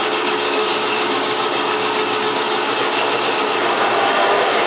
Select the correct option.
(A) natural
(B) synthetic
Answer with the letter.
B